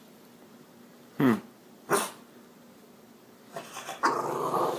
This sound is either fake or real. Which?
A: real